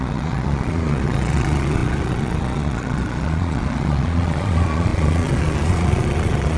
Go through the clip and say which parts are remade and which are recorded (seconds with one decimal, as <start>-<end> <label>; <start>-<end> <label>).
0.0-6.6 remade